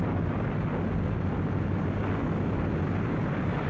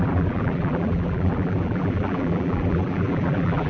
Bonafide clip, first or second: first